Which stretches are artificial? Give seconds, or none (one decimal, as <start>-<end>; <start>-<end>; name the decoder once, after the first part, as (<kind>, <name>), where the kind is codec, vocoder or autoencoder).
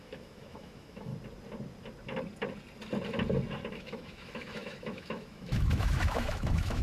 0.0-1.1 (autoencoder, DAC-VAE); 3.7-6.8